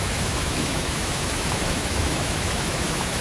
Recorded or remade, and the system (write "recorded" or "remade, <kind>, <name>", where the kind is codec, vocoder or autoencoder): remade, autoencoder, DAC-VAE